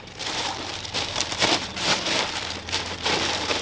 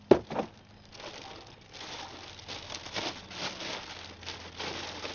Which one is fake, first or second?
first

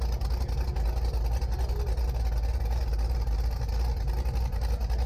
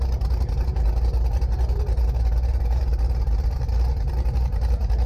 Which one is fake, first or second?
second